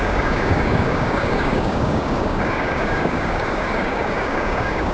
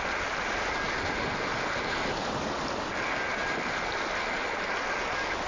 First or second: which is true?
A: second